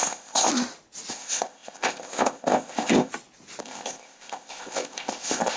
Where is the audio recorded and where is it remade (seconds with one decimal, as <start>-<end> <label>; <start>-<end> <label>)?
0.0-0.5 remade; 0.5-1.1 recorded; 1.1-3.1 remade; 3.1-3.6 recorded; 3.6-5.6 remade